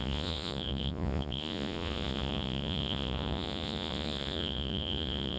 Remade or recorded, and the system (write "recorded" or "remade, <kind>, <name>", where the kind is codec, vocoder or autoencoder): remade, vocoder, Vocos